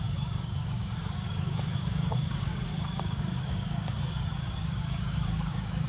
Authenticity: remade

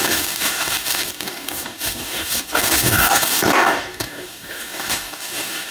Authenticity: remade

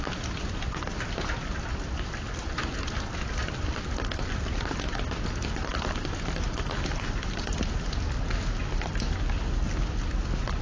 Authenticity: recorded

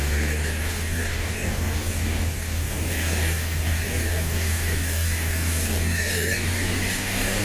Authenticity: remade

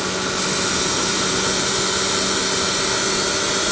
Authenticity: recorded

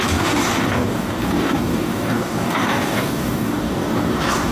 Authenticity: remade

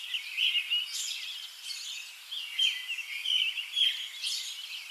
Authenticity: recorded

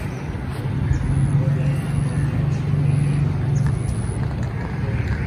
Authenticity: recorded